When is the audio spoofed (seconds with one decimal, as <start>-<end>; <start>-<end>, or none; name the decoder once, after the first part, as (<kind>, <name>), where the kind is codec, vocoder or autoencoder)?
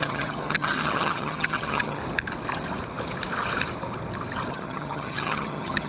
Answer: 0.0-2.0 (vocoder, HiFi-GAN); 4.5-5.9